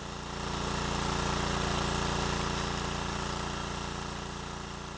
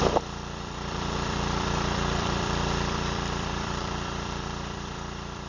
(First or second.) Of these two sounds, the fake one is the second